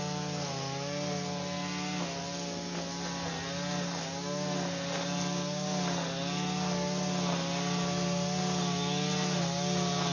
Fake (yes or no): no